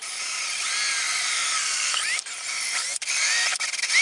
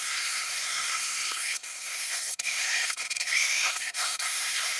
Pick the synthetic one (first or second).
second